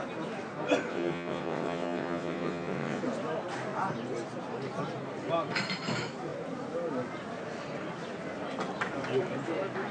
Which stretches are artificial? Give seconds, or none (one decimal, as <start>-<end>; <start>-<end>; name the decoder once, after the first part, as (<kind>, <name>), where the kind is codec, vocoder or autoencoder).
0.9-3.0 (vocoder, WaveNeXt)